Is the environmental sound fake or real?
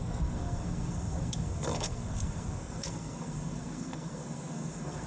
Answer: fake